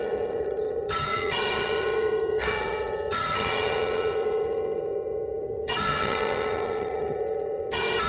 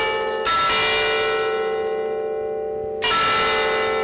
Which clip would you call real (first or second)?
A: second